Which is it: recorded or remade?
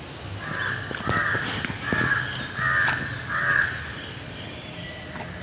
recorded